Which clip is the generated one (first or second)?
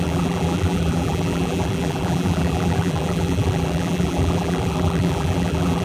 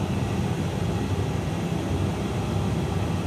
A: first